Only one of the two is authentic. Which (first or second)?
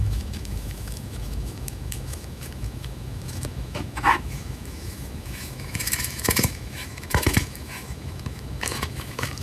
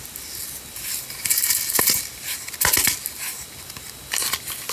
second